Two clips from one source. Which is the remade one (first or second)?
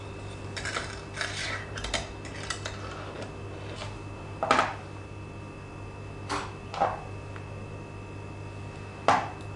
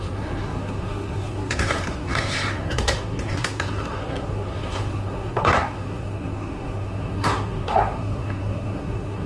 second